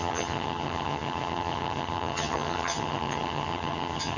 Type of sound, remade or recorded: remade